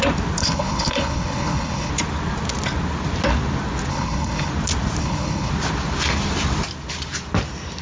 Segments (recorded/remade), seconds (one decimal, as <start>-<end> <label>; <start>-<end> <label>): 0.0-0.4 recorded; 0.4-1.9 remade; 1.9-3.9 recorded; 3.9-4.5 remade; 4.5-5.0 recorded; 5.0-5.5 remade; 5.5-7.8 recorded